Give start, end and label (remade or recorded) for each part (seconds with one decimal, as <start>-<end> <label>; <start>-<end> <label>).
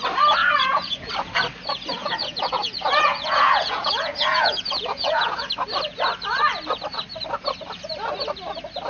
0.0-0.4 recorded; 0.4-1.1 remade; 1.1-2.0 recorded; 2.0-5.5 remade; 5.5-8.9 recorded